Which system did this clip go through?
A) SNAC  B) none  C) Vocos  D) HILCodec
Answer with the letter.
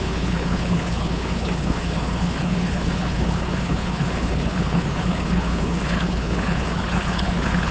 D